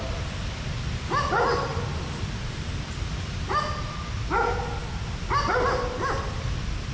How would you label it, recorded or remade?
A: recorded